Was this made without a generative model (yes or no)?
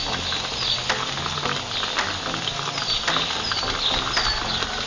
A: yes